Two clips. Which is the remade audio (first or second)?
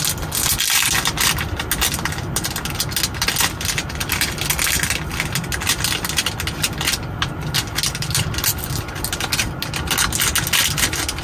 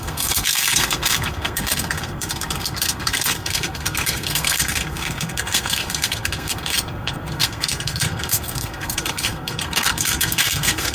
second